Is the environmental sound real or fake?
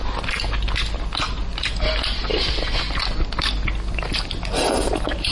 real